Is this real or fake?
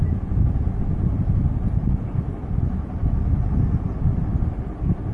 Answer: real